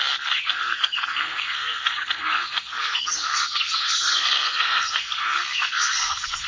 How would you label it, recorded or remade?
remade